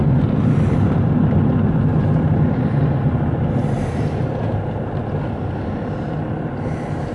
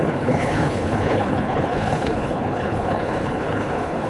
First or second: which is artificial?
second